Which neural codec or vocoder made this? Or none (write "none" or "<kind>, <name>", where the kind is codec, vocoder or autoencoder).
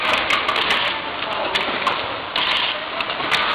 none